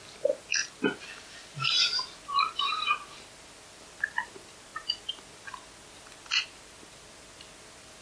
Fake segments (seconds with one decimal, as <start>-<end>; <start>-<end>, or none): none